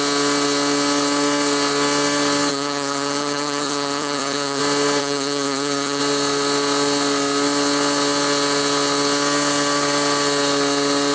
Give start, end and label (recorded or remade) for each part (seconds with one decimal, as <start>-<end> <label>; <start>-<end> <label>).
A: 0.0-2.5 recorded; 2.5-4.6 remade; 4.6-5.0 recorded; 5.0-6.0 remade; 6.0-11.1 recorded